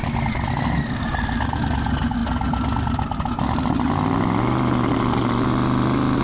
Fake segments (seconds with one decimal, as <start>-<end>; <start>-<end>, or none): none